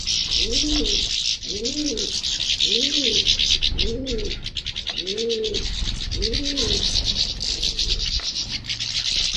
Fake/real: real